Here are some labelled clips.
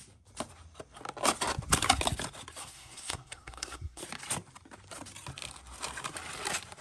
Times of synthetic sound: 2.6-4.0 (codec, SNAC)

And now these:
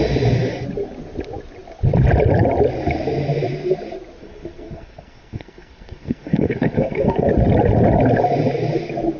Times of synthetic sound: 4.2-7.3 (codec, SNAC)

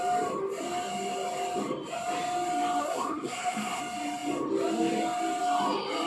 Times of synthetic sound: 2.8-3.8 (codec, SNAC)

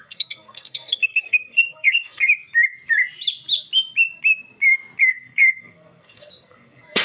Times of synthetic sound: 0.0-2.3 (codec, SNAC); 5.0-7.0